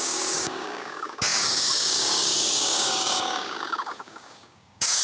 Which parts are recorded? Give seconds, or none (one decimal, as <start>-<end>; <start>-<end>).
none

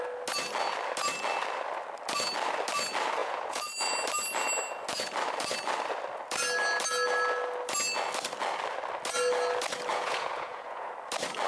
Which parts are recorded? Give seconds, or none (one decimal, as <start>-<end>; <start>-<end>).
0.0-3.2; 3.7-9.9; 10.9-11.5

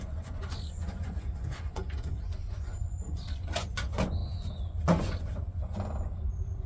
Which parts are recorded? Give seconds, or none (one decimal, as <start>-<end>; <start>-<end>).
none

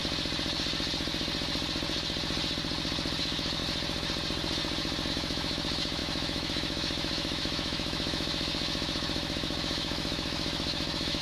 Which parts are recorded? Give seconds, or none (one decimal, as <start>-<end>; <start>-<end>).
0.0-3.2; 3.6-5.1

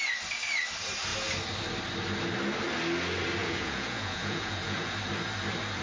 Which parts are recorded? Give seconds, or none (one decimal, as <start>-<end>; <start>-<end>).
0.0-3.4; 4.9-5.8

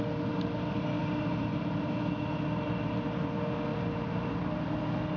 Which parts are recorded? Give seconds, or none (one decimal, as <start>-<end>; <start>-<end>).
0.0-5.2

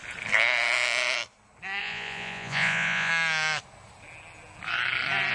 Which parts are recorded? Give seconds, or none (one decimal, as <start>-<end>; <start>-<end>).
0.0-1.8; 3.1-5.3